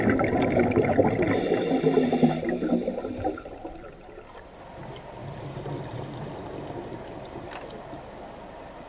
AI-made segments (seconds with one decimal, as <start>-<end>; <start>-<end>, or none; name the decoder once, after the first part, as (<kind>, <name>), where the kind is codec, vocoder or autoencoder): none